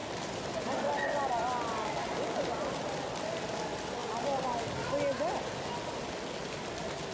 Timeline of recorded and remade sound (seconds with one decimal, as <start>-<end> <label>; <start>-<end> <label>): 0.0-0.5 remade; 0.5-7.1 recorded